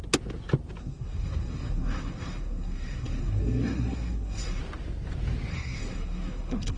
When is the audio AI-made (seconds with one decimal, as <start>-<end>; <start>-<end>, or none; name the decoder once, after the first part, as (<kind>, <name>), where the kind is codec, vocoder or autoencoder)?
0.8-4.6 (codec, SNAC); 5.5-6.8